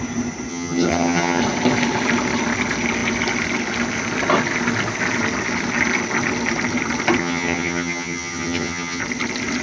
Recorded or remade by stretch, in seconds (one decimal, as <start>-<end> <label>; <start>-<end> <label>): 0.0-0.5 recorded; 0.5-1.4 remade; 1.4-7.2 recorded; 7.2-9.0 remade; 9.0-9.6 recorded